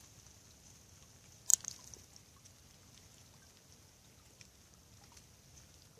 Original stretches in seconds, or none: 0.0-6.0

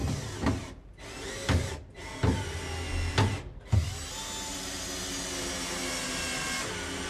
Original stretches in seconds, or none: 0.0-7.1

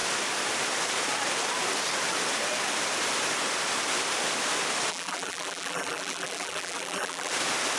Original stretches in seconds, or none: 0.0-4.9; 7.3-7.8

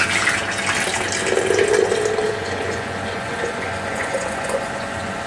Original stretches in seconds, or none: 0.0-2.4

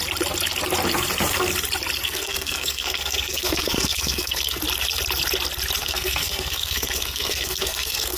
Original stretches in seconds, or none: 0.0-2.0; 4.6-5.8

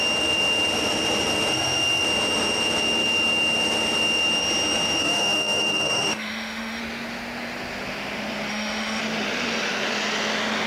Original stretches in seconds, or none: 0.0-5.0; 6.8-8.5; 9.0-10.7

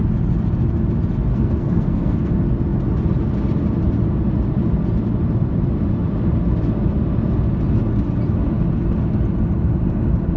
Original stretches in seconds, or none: 0.0-1.3; 2.3-10.4